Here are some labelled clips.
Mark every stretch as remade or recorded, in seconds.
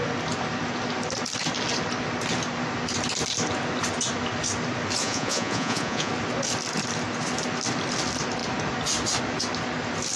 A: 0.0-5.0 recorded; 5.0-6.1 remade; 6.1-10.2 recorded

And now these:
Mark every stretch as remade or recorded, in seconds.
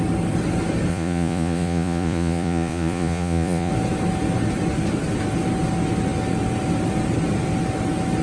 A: 0.0-0.9 recorded; 0.9-3.7 remade; 3.7-8.2 recorded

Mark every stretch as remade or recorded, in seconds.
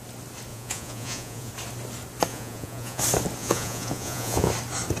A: 0.0-0.5 recorded; 0.5-1.5 remade; 1.5-2.3 recorded; 2.3-3.0 remade; 3.0-3.4 recorded; 3.4-4.5 remade; 4.5-5.0 recorded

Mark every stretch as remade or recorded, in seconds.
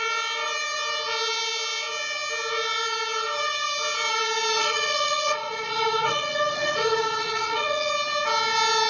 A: 0.0-4.6 recorded; 4.6-7.9 remade; 7.9-8.9 recorded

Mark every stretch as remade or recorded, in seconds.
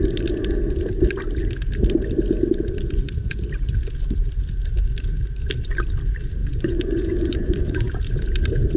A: 0.0-6.4 recorded; 6.4-7.9 remade; 7.9-8.8 recorded